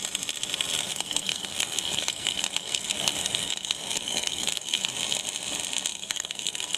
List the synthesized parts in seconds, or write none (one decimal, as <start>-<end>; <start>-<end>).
0.8-4.9; 5.9-6.8

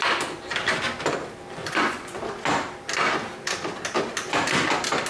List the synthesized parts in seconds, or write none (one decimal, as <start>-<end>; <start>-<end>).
1.6-2.2

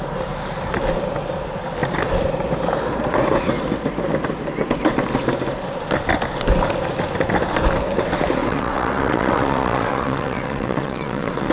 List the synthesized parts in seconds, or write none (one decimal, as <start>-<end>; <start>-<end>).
8.4-11.5

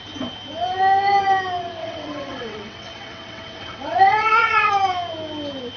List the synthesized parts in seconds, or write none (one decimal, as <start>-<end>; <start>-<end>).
1.8-4.7